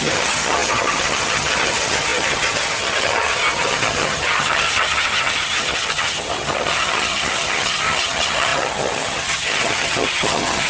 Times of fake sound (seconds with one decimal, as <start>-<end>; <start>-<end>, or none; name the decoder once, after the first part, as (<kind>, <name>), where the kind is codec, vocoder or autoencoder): 0.0-10.7 (vocoder, HiFi-GAN)